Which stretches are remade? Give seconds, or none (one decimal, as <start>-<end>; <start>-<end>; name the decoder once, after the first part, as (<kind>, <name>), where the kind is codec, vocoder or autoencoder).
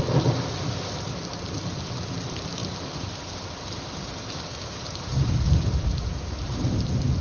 2.6-6.8 (vocoder, BigVGAN v2)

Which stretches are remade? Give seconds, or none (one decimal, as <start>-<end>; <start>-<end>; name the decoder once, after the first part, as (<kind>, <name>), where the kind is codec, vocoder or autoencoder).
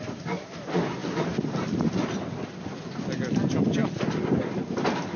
1.0-3.0 (vocoder, BigVGAN v2); 3.8-4.4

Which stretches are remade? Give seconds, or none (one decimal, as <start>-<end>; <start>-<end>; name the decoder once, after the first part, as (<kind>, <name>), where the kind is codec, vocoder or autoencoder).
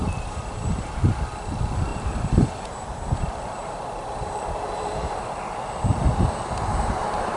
1.9-5.4 (vocoder, BigVGAN v2); 6.7-7.4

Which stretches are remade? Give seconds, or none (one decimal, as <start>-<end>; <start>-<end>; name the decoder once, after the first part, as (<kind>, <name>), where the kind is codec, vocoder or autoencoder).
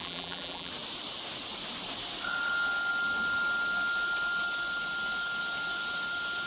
0.0-0.7 (vocoder, BigVGAN v2)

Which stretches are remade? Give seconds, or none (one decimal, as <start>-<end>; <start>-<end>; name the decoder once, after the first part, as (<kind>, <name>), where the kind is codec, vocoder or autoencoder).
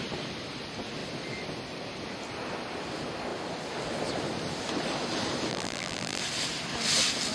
5.5-6.2 (vocoder, BigVGAN v2)